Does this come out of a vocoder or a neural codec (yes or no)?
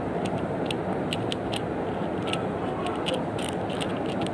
no